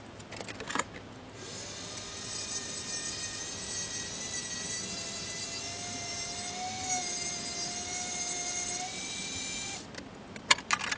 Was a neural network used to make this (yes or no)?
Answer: no